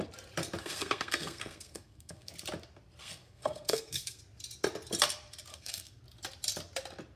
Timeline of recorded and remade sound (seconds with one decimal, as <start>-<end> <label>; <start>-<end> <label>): 0.0-0.6 recorded; 0.6-2.3 remade; 2.3-3.0 recorded; 3.0-4.2 remade; 4.2-5.5 recorded; 5.5-6.0 remade; 6.0-7.2 recorded